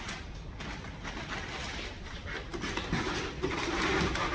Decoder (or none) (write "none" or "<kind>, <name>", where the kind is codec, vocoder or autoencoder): none